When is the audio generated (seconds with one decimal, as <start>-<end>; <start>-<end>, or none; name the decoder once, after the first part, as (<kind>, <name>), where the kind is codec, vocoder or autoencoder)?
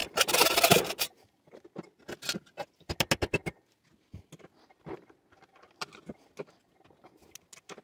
0.0-1.5 (vocoder, BigVGAN v2)